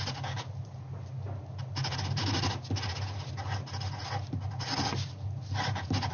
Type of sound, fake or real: real